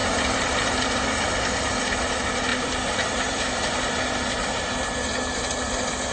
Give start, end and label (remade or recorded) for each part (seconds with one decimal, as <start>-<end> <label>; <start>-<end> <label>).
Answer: 0.0-1.6 remade; 1.6-2.5 recorded; 2.5-4.6 remade; 4.6-6.1 recorded